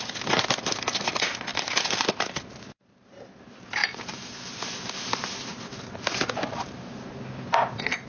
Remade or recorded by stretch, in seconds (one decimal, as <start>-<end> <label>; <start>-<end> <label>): 0.0-1.5 recorded; 1.5-2.4 remade; 2.4-3.8 recorded; 3.8-7.1 remade; 7.1-8.1 recorded